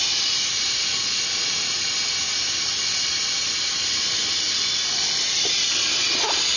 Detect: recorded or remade recorded